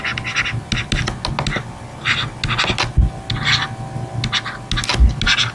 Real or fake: real